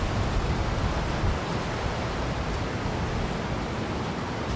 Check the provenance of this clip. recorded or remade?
recorded